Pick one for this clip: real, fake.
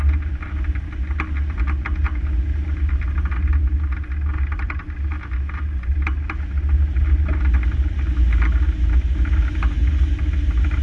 real